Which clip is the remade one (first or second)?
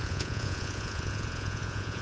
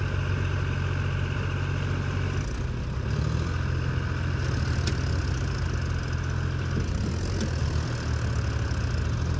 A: first